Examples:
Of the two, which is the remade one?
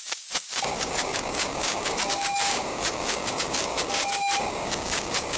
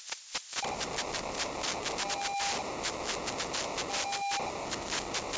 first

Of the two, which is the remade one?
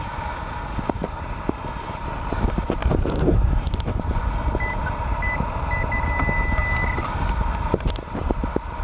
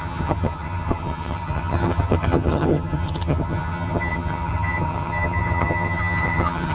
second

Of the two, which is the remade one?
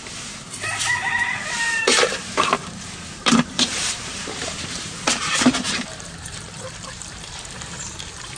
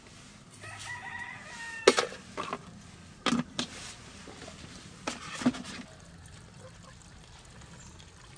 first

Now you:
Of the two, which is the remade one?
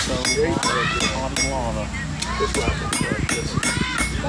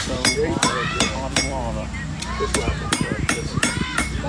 second